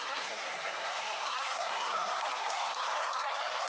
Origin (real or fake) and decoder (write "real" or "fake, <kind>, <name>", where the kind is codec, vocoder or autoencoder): fake, codec, SNAC